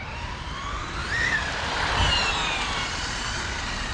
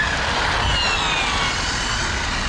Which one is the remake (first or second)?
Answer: first